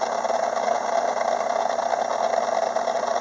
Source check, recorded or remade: recorded